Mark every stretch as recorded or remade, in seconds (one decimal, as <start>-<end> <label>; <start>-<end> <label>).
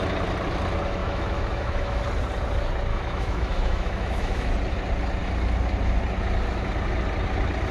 0.0-1.0 recorded; 1.0-2.0 remade; 2.0-2.9 recorded; 2.9-4.5 remade; 4.5-7.7 recorded